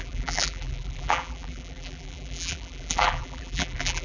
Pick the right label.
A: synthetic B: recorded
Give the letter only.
A